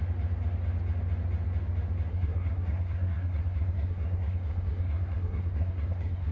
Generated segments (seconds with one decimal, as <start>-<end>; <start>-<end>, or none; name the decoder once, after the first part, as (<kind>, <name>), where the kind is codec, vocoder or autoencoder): 2.1-6.3 (codec, SNAC)